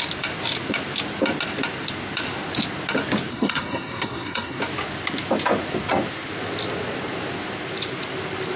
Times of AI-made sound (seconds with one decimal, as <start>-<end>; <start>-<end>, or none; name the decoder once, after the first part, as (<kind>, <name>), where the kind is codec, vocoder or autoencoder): 3.3-4.6 (codec, SNAC)